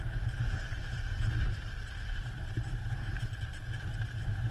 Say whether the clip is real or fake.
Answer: fake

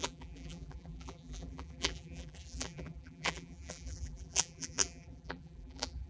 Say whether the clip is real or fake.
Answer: fake